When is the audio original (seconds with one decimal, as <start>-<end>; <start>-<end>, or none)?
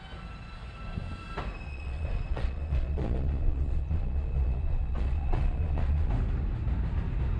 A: 0.0-1.7; 6.1-7.4